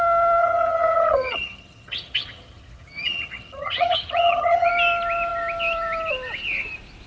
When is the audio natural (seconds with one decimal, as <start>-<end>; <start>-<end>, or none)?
0.0-0.4; 4.7-7.1